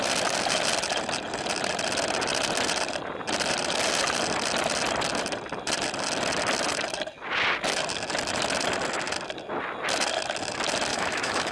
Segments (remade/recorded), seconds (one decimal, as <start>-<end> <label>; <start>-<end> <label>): 0.0-10.9 recorded; 10.9-11.5 remade